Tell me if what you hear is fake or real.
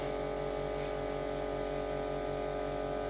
real